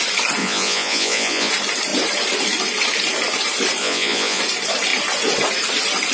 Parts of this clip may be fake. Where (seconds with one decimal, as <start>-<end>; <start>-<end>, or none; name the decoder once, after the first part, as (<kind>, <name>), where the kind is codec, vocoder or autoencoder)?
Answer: 0.4-1.5 (vocoder, Vocos); 3.8-4.4